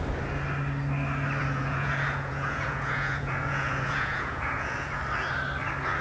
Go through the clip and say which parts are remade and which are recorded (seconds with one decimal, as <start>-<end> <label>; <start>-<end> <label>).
0.0-1.4 recorded; 1.4-5.0 remade; 5.0-6.0 recorded